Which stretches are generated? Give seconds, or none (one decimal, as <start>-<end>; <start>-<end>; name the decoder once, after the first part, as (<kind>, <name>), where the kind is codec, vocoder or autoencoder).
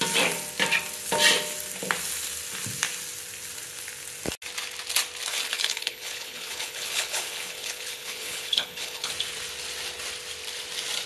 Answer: 5.3-9.1 (codec, HILCodec)